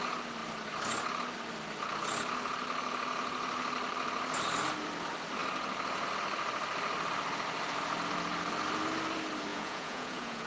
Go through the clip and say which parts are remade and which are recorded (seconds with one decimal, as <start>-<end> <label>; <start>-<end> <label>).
0.0-9.5 recorded; 9.5-10.5 remade